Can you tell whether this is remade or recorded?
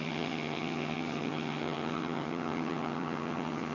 remade